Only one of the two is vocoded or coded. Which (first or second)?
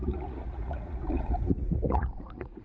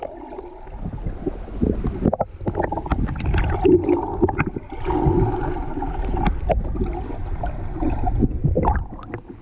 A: first